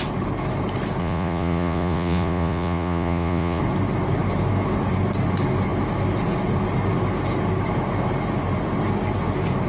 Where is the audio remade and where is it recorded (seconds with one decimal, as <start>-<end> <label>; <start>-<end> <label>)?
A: 0.0-1.0 recorded; 1.0-3.6 remade; 3.6-9.7 recorded